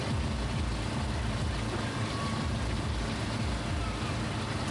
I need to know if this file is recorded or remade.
recorded